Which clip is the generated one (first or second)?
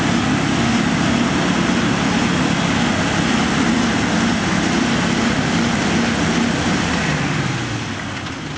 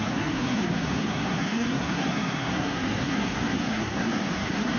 second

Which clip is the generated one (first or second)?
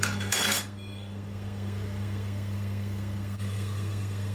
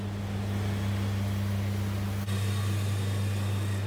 first